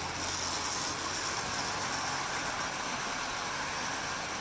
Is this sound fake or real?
real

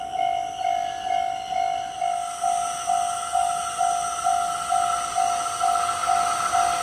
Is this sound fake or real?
real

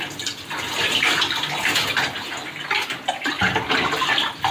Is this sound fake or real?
real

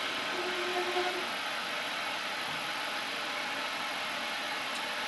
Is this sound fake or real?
real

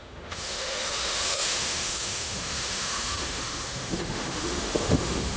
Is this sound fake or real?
fake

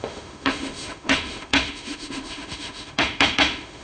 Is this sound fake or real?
fake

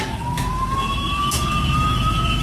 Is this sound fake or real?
fake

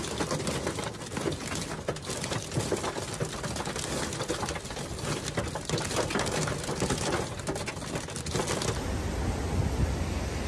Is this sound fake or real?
real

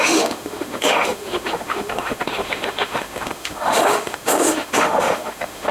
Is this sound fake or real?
fake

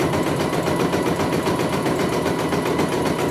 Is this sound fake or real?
real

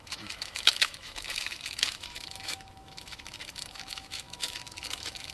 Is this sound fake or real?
fake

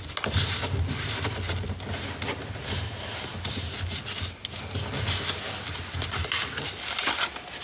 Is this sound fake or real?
real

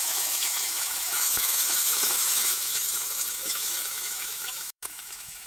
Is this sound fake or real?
fake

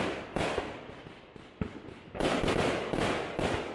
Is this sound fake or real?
real